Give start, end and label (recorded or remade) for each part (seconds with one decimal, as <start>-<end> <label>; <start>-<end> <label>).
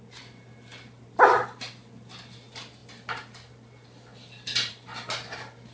0.0-0.7 recorded; 0.7-1.4 remade; 1.4-5.7 recorded